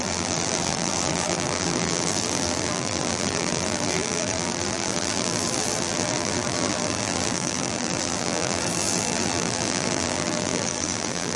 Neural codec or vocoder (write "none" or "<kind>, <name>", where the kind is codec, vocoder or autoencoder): vocoder, BigVGAN v2